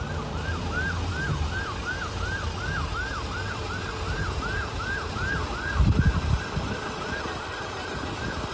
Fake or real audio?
real